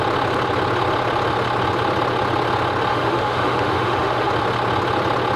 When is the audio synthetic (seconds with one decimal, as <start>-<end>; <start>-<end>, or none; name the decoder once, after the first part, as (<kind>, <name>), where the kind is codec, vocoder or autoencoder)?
2.9-4.3 (autoencoder, DAC-VAE)